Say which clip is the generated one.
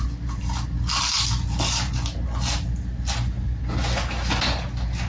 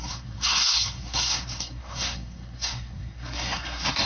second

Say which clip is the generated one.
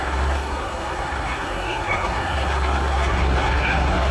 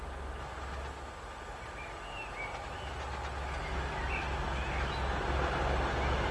first